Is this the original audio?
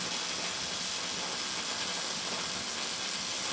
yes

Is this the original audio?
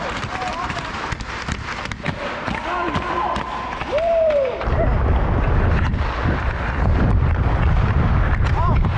no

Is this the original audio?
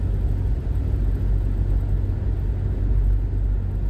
yes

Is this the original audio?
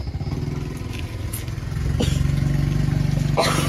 yes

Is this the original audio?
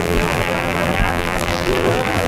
no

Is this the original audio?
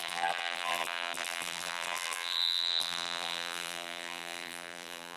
no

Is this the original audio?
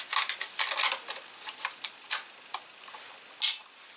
yes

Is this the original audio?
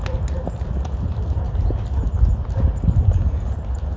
yes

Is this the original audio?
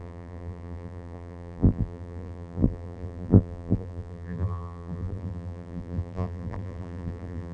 no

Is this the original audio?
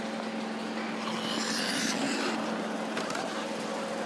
yes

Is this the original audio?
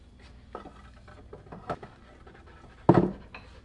yes